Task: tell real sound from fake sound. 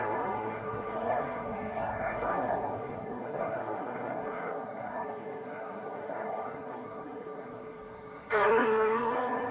fake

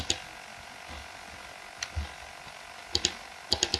real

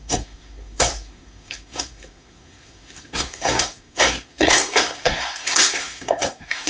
fake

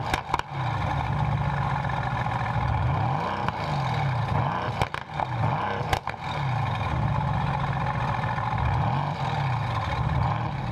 real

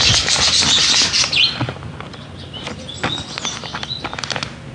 real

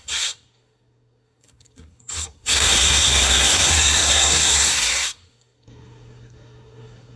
fake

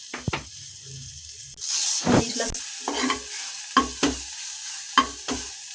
real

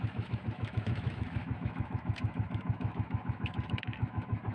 fake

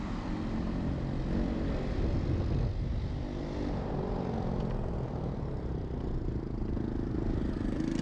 real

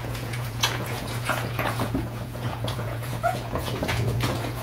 fake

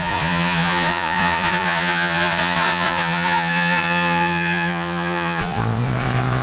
fake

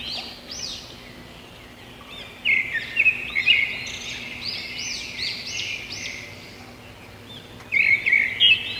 real